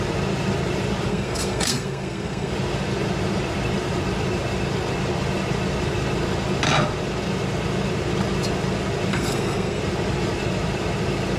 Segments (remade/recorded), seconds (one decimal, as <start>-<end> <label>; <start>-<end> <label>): 0.0-1.1 recorded; 1.1-2.5 remade; 2.5-9.1 recorded; 9.1-9.8 remade; 9.8-11.4 recorded